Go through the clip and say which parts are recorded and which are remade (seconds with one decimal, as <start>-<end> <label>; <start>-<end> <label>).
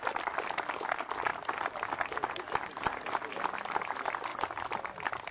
0.0-4.3 recorded; 4.3-5.3 remade